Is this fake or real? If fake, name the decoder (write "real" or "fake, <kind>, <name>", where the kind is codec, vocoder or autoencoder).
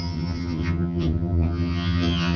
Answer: fake, vocoder, HiFi-GAN